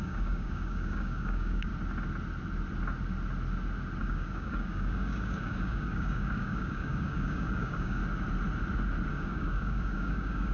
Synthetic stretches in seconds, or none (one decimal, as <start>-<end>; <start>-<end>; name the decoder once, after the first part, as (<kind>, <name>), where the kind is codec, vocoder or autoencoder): 0.0-1.7 (codec, DAC); 4.0-8.0; 9.1-10.5